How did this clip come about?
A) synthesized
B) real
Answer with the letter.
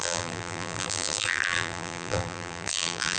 A